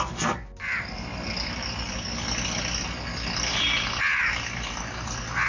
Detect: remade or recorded recorded